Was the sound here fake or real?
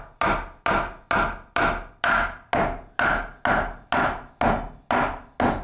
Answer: real